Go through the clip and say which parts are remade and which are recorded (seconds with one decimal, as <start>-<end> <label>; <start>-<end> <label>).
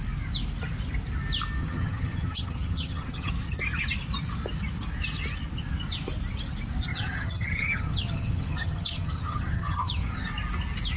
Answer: 0.0-1.6 recorded; 1.6-3.3 remade; 3.3-6.9 recorded; 6.9-10.3 remade; 10.3-11.0 recorded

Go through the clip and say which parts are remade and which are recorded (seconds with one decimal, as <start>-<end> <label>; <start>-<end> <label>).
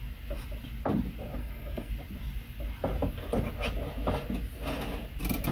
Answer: 0.0-1.4 recorded; 1.4-1.9 remade; 1.9-5.5 recorded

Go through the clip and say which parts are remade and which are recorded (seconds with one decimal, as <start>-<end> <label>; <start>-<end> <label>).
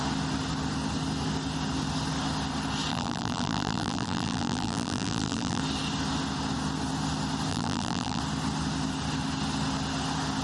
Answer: 0.0-2.9 recorded; 2.9-5.6 remade; 5.6-7.5 recorded; 7.5-8.2 remade; 8.2-10.4 recorded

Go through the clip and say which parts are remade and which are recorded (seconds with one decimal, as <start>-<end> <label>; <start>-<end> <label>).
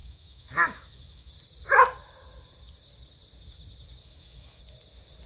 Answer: 0.0-1.3 remade; 1.3-4.0 recorded; 4.0-4.6 remade; 4.6-5.3 recorded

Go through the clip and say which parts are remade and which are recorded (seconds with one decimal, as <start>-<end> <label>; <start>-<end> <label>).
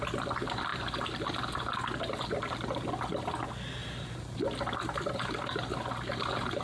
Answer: 0.0-6.6 recorded